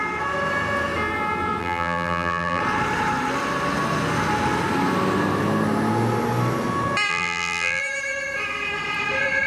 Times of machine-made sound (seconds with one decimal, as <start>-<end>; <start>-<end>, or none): 1.6-2.6; 7.1-7.8